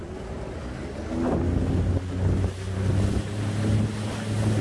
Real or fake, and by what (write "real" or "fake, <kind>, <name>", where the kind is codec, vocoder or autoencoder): real